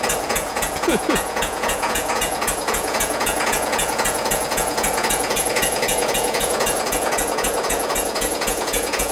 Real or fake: fake